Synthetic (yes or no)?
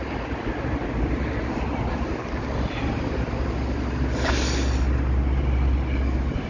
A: no